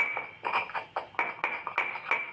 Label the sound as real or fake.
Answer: real